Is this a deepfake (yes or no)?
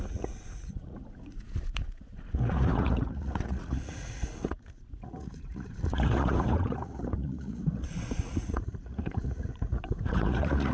yes